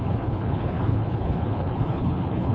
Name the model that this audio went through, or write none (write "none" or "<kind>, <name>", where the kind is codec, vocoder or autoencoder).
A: codec, HILCodec